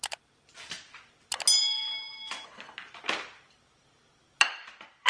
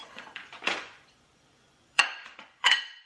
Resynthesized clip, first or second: second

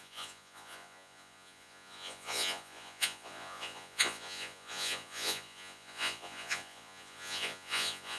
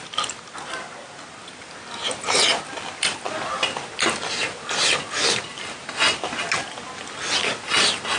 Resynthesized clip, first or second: first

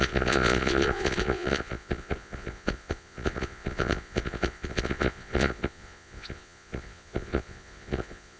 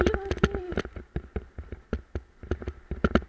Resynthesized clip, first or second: first